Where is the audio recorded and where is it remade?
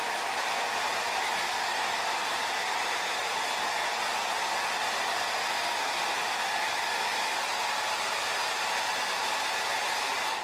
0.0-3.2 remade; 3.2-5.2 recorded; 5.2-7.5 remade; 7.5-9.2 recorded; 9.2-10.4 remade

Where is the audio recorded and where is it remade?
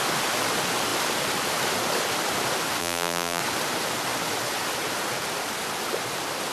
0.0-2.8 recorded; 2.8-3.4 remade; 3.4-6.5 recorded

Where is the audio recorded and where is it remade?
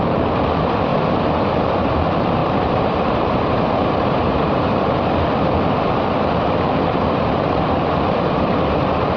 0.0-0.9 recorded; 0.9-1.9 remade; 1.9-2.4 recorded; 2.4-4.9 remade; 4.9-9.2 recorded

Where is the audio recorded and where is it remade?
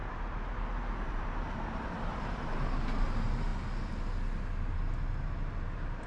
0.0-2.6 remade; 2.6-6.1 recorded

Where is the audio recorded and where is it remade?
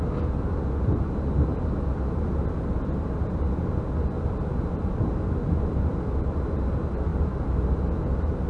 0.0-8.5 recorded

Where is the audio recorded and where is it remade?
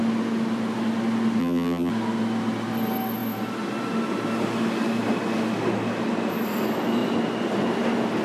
0.0-1.4 recorded; 1.4-1.9 remade; 1.9-8.2 recorded